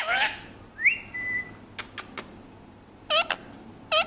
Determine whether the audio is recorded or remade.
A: recorded